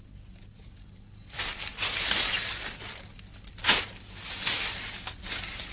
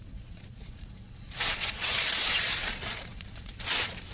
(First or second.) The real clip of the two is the first